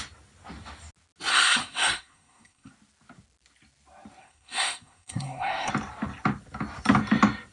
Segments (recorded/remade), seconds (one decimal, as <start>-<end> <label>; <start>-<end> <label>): 0.0-1.3 recorded; 1.3-2.7 remade; 2.7-4.2 recorded; 4.2-5.7 remade; 5.7-7.5 recorded